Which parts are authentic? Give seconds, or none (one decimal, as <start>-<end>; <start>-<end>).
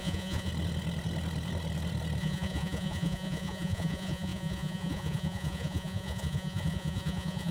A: 0.5-2.2